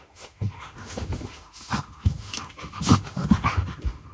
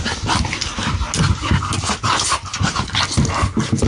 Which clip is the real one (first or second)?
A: second